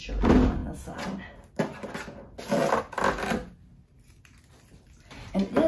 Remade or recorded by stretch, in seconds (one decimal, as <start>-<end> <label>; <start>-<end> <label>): 0.0-5.7 recorded